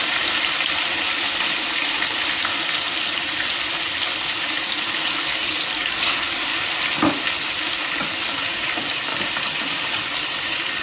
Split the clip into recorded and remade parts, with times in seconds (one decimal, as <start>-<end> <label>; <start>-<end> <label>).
0.0-9.1 recorded; 9.1-9.8 remade; 9.8-10.8 recorded